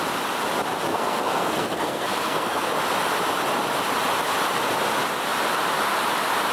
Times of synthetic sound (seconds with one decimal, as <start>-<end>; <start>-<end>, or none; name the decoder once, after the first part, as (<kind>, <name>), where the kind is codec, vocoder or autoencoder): 0.9-2.7 (codec, SNAC)